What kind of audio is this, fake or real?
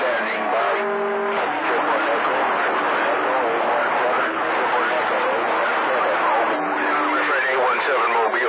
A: real